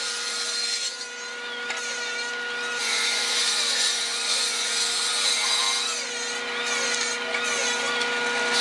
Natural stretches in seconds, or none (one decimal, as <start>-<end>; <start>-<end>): 0.0-2.8; 5.1-8.6